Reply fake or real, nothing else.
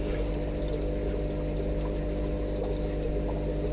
real